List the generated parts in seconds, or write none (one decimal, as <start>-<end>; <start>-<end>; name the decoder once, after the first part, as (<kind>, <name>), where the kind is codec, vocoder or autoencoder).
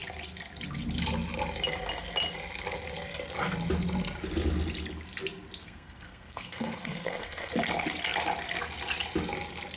5.6-7.5 (codec, SNAC)